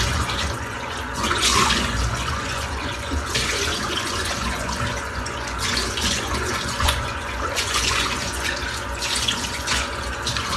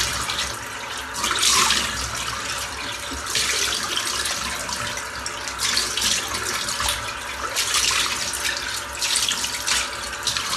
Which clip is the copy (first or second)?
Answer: first